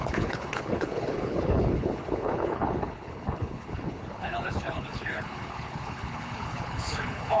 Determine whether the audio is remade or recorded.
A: remade